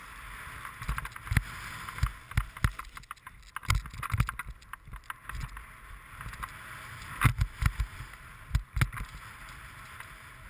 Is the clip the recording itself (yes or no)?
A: yes